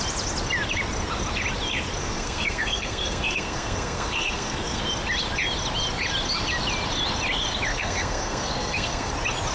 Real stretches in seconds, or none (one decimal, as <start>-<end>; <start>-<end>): 0.0-2.0; 4.8-7.7; 9.1-9.5